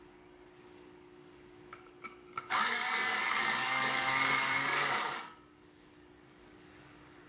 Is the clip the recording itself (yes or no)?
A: no